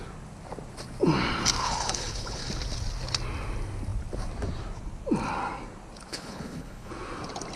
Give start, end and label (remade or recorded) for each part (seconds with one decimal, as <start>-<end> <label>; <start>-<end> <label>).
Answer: 0.0-1.6 recorded; 1.6-2.5 remade; 2.5-6.1 recorded; 6.1-6.9 remade; 6.9-7.6 recorded